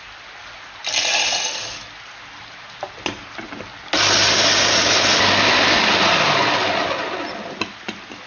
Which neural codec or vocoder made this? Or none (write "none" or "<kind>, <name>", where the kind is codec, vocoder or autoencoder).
none